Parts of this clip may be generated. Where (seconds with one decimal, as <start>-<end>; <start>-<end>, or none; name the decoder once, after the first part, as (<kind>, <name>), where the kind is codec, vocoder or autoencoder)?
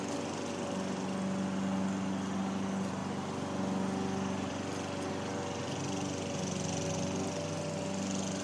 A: none